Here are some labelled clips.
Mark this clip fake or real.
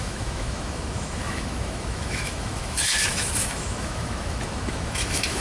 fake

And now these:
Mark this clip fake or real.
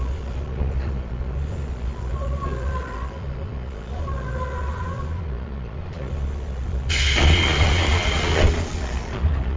fake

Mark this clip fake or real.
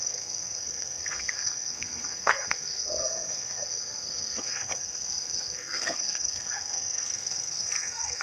fake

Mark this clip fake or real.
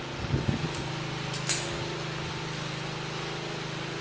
real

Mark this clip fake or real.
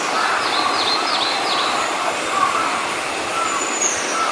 real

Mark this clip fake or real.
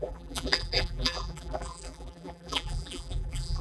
fake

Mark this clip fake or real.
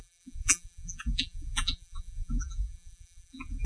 fake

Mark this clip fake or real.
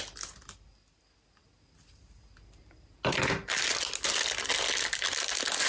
real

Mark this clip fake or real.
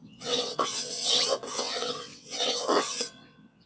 fake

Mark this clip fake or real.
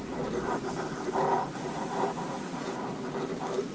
real